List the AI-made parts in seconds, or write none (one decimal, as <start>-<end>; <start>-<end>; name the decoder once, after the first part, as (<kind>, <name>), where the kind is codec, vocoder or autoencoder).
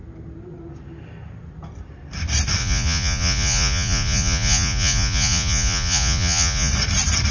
2.6-6.7 (vocoder, Vocos)